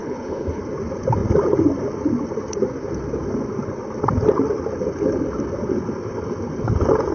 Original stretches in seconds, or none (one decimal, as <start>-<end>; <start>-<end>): 0.6-7.1